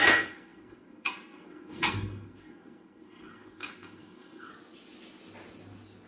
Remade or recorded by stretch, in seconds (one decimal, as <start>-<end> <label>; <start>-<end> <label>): 0.0-4.5 remade; 4.5-6.1 recorded